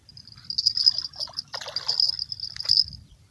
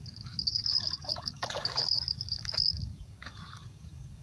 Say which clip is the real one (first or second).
first